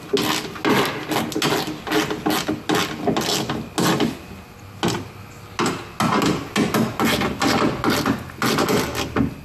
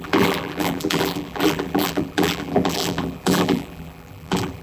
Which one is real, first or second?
first